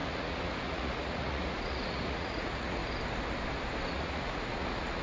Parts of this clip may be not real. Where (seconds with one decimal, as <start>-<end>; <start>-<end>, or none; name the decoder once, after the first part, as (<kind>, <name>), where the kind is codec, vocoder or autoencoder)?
0.0-2.8 (vocoder, Vocos); 3.9-5.0